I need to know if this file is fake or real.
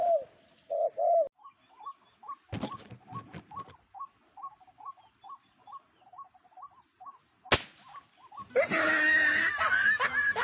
real